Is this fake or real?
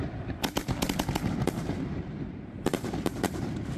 fake